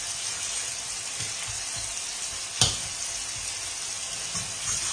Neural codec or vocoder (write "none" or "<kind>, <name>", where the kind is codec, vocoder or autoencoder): none